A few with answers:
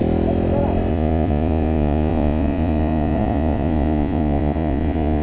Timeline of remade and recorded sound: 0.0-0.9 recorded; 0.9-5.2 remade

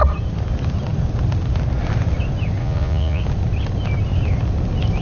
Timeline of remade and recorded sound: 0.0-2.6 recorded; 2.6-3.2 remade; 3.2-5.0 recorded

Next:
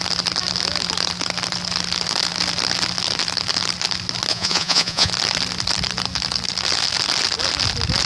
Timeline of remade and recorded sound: 0.0-4.3 recorded; 4.3-5.1 remade; 5.1-8.1 recorded